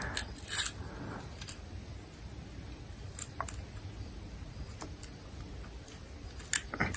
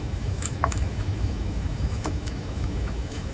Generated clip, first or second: second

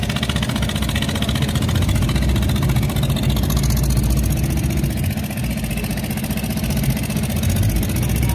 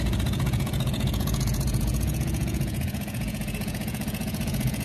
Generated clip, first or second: second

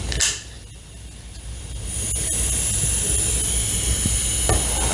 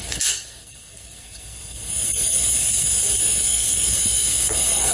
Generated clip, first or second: second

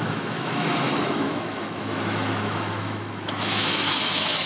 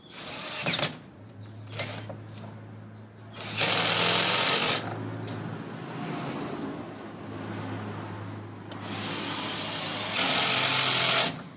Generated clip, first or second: first